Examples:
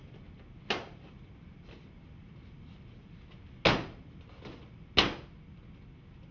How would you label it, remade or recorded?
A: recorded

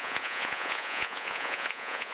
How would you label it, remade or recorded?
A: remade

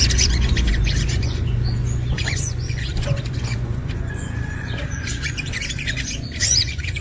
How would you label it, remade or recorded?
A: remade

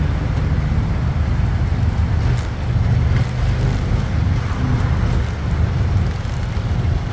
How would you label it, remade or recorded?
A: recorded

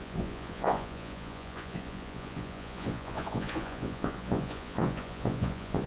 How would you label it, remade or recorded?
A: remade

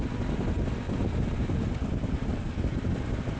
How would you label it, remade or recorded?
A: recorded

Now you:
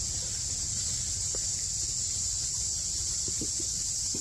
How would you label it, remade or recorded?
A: recorded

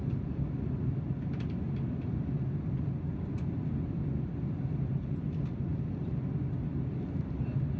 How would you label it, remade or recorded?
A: recorded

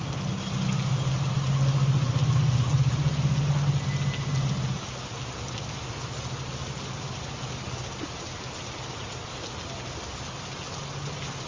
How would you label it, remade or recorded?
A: recorded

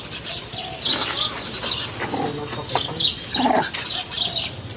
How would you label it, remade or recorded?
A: recorded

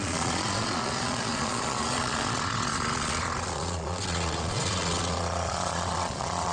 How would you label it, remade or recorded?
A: remade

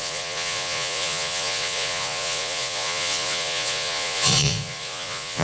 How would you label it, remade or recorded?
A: remade